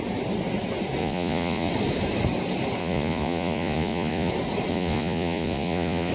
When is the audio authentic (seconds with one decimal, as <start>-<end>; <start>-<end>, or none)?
0.0-1.0; 1.7-2.8; 4.3-4.7